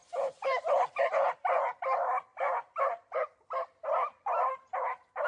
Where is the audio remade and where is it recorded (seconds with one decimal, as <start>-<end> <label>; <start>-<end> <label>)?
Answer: 0.0-2.3 remade; 2.3-4.5 recorded; 4.5-5.3 remade